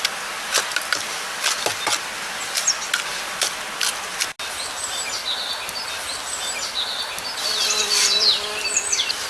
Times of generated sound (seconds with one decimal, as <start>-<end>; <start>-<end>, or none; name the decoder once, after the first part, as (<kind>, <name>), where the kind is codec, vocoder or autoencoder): 0.0-1.7 (vocoder, BigVGAN v2); 3.1-4.1; 7.8-9.3